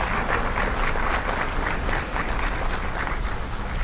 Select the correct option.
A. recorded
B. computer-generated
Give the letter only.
A